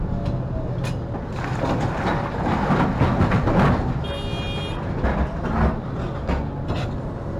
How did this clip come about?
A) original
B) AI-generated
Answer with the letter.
A